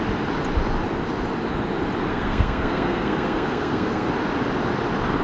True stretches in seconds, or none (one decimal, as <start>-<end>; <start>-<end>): 0.0-2.1; 4.1-5.2